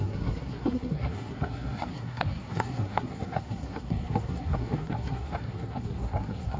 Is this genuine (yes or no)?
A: no